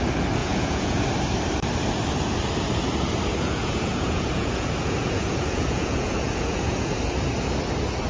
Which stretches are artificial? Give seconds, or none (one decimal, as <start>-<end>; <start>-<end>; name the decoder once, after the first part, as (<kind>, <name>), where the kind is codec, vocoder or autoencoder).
0.4-1.0 (vocoder, Vocos); 3.3-6.9

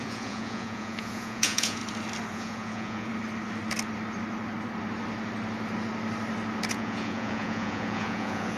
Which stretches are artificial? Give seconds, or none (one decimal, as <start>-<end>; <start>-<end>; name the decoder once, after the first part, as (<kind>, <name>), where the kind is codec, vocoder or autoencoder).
0.0-1.8 (vocoder, Vocos); 2.3-3.1; 6.7-8.6

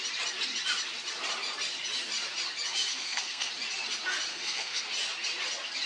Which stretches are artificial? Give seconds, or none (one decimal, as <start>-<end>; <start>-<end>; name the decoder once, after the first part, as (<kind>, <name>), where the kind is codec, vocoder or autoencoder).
2.9-3.5 (codec, SNAC); 4.3-4.8

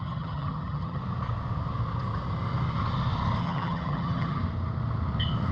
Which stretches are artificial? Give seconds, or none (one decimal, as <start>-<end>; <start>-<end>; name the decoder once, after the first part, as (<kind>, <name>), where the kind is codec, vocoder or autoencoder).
0.0-1.0 (vocoder, HiFi-GAN); 3.4-4.4

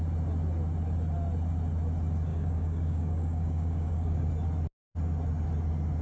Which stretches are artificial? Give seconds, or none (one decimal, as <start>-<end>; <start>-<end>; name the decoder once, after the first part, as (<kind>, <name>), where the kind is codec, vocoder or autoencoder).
2.3-4.3 (codec, DAC)